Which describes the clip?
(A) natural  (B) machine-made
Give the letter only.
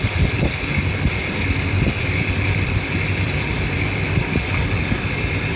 A